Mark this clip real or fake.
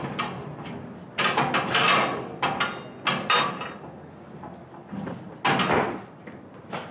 real